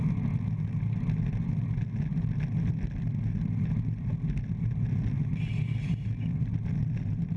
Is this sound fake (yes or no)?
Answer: no